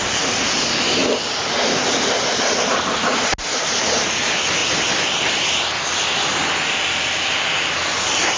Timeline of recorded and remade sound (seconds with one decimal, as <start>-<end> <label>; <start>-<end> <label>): 0.0-8.4 recorded